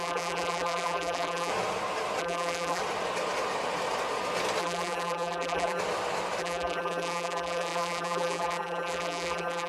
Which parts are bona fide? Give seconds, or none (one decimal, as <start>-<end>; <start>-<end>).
1.5-2.2; 2.8-4.6; 5.8-6.4